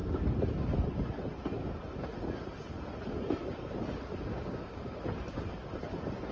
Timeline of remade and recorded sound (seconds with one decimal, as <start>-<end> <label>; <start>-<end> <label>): 0.0-4.3 recorded; 4.3-5.0 remade; 5.0-6.3 recorded